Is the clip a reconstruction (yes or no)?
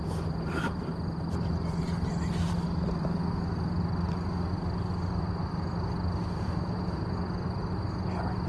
no